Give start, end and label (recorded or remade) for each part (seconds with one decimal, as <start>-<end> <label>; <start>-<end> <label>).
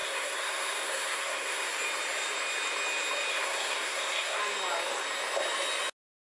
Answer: 0.0-1.7 remade; 1.7-3.3 recorded; 3.3-4.4 remade; 4.4-6.2 recorded